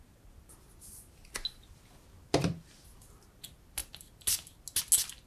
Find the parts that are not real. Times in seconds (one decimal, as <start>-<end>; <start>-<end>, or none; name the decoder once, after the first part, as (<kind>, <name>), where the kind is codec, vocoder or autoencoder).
none